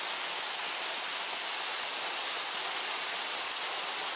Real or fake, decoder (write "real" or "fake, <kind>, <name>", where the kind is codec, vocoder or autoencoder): real